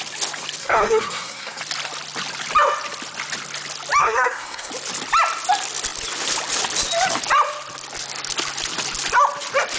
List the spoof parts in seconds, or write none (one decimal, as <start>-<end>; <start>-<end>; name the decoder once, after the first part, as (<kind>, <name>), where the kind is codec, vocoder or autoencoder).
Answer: 0.6-1.6 (codec, SNAC); 4.0-4.7